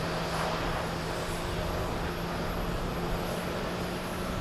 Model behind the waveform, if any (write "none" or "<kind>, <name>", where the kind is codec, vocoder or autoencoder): none